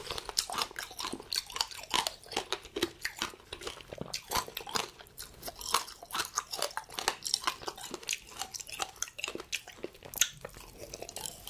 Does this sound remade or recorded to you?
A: recorded